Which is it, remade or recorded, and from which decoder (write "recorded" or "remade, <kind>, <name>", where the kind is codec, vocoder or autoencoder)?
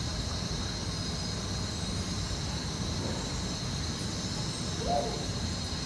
recorded